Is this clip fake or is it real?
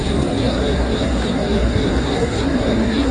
fake